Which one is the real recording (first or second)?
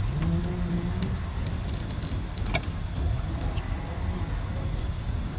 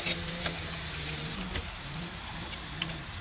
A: first